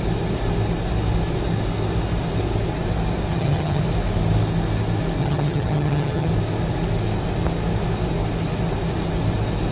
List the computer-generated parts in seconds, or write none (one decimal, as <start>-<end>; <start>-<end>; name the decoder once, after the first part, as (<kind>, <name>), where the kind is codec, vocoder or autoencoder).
3.3-3.8 (vocoder, HiFi-GAN); 5.2-6.3